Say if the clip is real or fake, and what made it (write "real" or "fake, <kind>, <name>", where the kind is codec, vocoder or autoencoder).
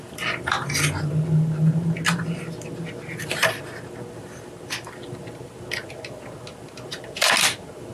real